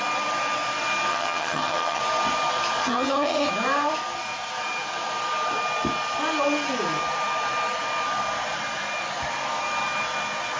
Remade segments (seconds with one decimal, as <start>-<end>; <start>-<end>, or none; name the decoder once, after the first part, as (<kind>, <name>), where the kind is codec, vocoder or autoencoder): 1.1-2.0 (vocoder, HiFi-GAN); 2.8-3.5